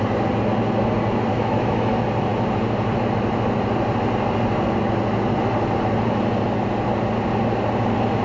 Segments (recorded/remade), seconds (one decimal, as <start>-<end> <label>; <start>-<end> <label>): 0.0-1.3 recorded; 1.3-1.9 remade; 1.9-8.2 recorded